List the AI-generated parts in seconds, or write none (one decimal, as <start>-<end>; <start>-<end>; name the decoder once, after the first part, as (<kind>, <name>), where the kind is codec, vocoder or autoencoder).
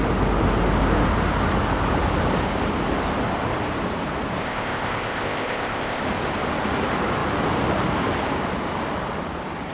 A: 4.4-6.0 (codec, ZipCodec)